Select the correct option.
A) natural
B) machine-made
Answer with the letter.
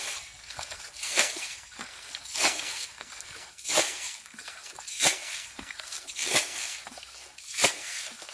B